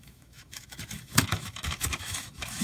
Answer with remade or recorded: remade